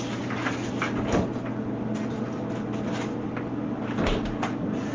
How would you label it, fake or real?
real